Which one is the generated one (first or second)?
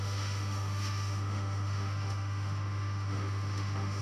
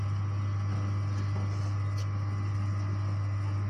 first